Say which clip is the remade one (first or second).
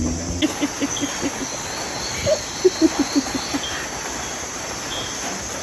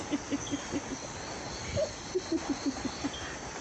second